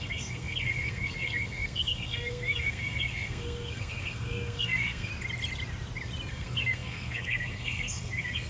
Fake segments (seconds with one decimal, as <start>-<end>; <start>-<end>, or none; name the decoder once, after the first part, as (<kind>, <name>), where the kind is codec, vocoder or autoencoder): 0.0-5.1 (codec, SNAC); 6.3-8.5